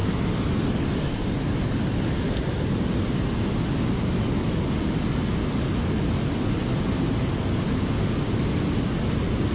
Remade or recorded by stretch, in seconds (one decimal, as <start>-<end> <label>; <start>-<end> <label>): 0.0-9.5 recorded